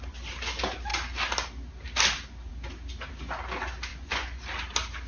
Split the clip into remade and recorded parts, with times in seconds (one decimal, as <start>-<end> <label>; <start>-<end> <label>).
0.0-3.9 recorded; 3.9-4.4 remade; 4.4-5.1 recorded